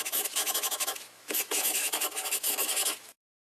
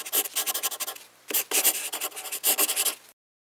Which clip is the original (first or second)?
second